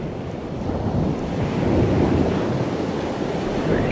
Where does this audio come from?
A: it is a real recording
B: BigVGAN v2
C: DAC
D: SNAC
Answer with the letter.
A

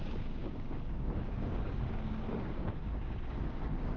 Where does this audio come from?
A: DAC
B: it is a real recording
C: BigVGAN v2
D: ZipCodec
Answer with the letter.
A